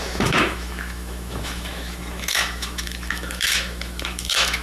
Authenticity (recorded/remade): remade